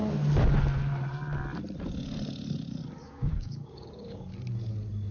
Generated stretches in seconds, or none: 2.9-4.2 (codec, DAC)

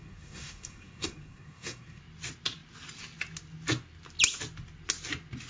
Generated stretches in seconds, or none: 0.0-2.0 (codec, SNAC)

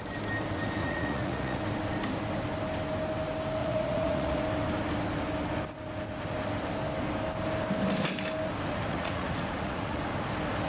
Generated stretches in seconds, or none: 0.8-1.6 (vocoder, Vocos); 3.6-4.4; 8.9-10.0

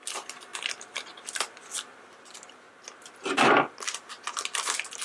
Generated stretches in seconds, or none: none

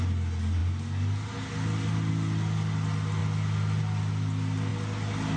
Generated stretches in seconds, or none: none

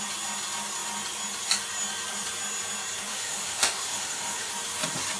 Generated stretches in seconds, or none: 3.1-4.5 (autoencoder, DAC-VAE)

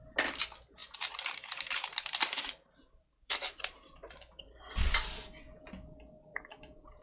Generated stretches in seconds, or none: 0.8-4.5 (vocoder, BigVGAN v2); 6.3-7.0

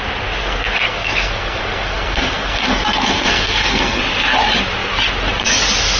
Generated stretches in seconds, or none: 0.4-4.0 (codec, SNAC)